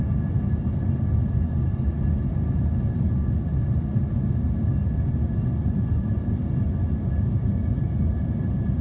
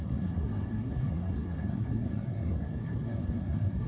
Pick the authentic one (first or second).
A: first